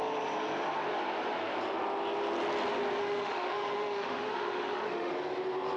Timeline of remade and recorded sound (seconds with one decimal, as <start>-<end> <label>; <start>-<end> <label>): 0.0-3.0 recorded; 3.0-5.1 remade; 5.1-5.8 recorded